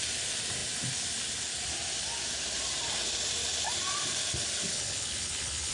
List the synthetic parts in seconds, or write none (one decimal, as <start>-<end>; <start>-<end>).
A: 4.7-5.7